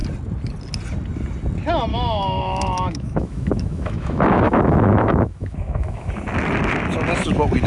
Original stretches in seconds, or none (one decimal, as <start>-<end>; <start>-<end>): 0.0-1.9; 6.1-7.7